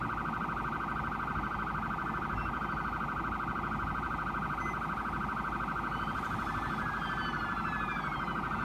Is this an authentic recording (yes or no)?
yes